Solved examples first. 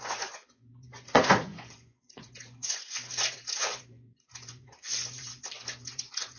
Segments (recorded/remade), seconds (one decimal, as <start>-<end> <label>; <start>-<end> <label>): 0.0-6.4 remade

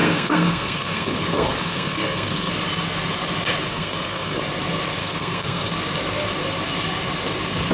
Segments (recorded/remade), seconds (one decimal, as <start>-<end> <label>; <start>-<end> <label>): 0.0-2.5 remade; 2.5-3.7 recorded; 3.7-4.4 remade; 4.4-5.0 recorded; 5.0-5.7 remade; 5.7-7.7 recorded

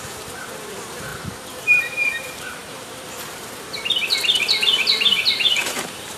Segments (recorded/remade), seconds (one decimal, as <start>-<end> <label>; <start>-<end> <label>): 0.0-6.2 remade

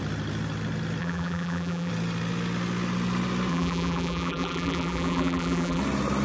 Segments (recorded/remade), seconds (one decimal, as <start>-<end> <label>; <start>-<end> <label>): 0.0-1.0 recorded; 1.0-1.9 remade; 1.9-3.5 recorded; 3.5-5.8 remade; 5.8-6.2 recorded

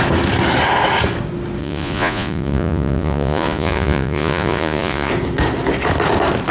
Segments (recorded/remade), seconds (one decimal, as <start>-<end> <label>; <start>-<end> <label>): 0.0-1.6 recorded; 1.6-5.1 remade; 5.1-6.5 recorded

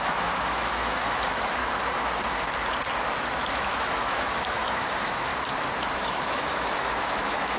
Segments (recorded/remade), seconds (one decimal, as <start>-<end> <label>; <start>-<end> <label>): 0.0-1.6 remade; 1.6-3.5 recorded; 3.5-5.3 remade; 5.3-6.0 recorded; 6.0-7.6 remade

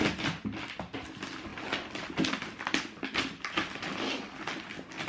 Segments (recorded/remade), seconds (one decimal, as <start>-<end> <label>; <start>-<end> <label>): 0.0-5.1 recorded

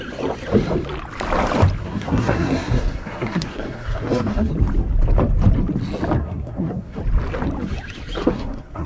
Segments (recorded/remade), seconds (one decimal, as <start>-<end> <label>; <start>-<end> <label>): 0.0-1.8 recorded; 1.8-4.5 remade; 4.5-6.2 recorded; 6.2-7.0 remade; 7.0-8.2 recorded; 8.2-8.9 remade